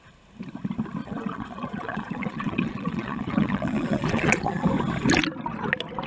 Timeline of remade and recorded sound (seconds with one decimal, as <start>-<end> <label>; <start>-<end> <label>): 0.0-1.0 recorded; 1.0-4.7 remade; 4.7-6.1 recorded